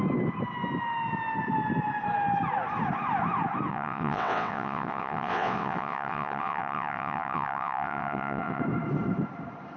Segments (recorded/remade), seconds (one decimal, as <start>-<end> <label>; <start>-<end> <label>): 0.0-3.7 recorded; 3.7-8.6 remade; 8.6-9.8 recorded